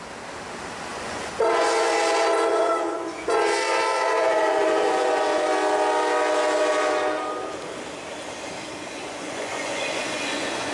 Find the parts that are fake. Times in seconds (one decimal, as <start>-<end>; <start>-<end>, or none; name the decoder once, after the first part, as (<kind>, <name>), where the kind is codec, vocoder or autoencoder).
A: 0.9-2.0 (vocoder, Vocos); 2.5-5.5; 8.8-10.7